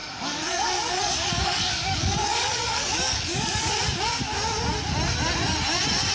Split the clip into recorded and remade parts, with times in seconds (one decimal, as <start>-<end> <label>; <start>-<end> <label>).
0.0-3.7 remade; 3.7-6.1 recorded